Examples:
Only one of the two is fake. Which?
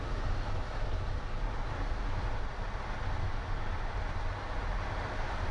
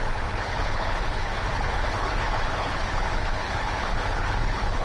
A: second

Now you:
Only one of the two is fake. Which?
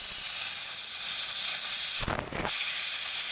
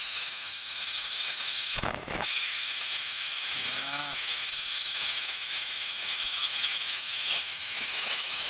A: second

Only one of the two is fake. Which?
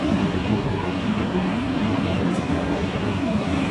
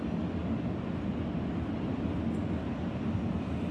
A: first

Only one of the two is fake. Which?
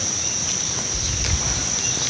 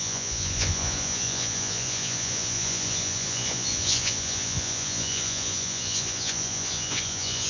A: second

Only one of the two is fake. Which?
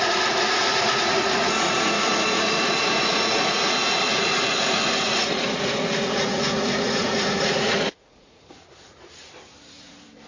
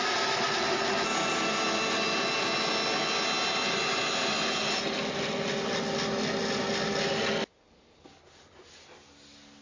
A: first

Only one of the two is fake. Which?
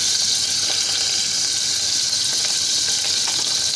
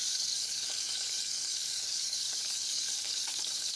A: second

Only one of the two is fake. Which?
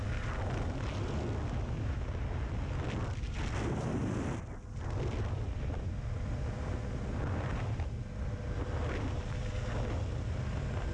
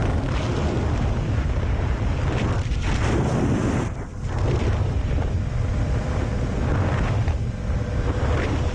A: second